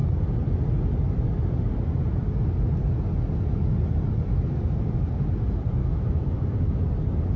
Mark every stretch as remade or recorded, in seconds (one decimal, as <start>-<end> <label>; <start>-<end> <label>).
0.0-5.8 recorded; 5.8-6.8 remade; 6.8-7.4 recorded